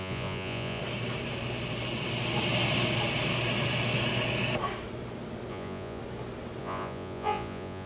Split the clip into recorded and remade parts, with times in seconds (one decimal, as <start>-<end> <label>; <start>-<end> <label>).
0.0-0.8 remade; 0.8-5.5 recorded; 5.5-6.0 remade; 6.0-6.6 recorded; 6.6-7.9 remade